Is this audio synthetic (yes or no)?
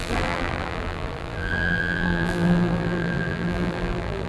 yes